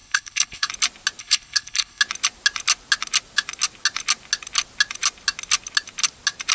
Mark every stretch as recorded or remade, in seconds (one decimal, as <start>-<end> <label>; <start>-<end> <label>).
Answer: 0.0-0.7 remade; 0.7-1.2 recorded; 1.2-2.0 remade; 2.0-6.5 recorded